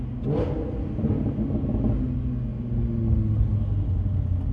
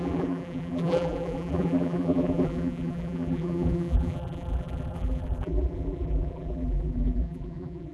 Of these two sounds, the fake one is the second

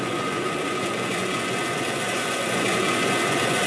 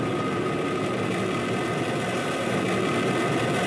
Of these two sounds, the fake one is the first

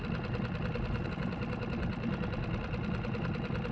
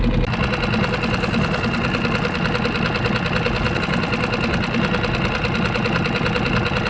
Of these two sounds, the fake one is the first